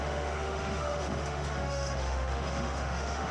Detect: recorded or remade remade